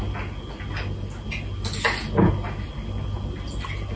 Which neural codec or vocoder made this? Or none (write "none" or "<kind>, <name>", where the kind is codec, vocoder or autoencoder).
none